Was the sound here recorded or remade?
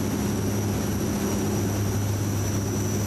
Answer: recorded